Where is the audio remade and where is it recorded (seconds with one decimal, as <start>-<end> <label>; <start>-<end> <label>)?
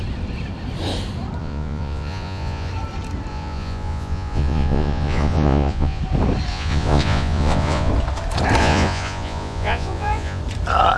0.0-1.4 recorded; 1.4-2.7 remade; 2.7-3.3 recorded; 3.3-6.0 remade; 6.0-6.5 recorded; 6.5-7.9 remade; 7.9-8.6 recorded; 8.6-10.4 remade; 10.4-11.0 recorded